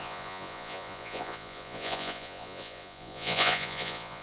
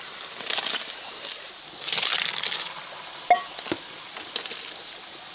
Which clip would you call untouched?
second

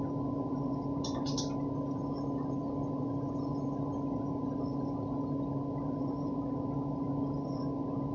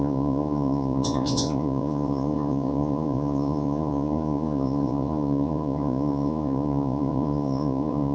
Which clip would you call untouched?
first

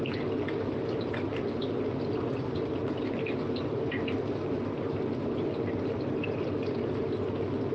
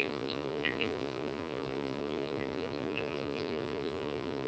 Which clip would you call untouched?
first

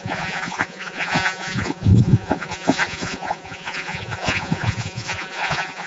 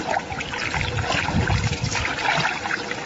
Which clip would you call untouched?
second